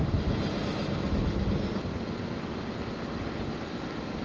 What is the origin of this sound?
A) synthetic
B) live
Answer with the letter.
B